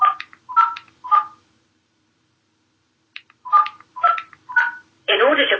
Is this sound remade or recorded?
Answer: remade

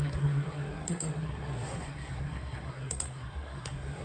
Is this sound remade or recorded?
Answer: remade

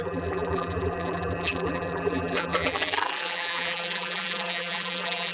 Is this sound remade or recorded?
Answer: remade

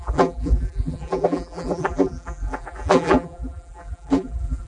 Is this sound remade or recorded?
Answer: remade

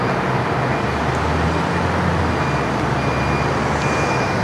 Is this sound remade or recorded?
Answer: recorded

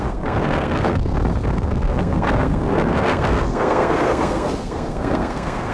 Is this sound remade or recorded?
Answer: remade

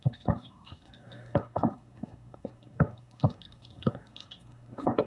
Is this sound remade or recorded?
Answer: remade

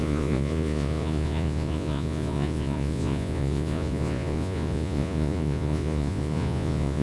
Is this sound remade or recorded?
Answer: remade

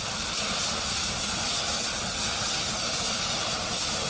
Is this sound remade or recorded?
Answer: recorded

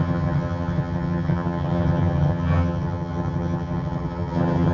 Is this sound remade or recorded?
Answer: remade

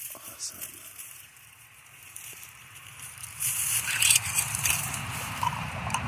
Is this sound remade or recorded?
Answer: remade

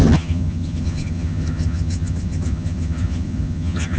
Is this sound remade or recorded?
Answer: remade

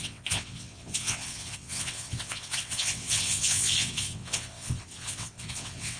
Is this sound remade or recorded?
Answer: remade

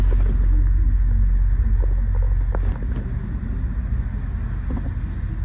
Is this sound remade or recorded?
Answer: recorded